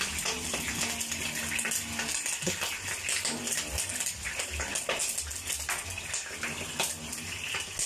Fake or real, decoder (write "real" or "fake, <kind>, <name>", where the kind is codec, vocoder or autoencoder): real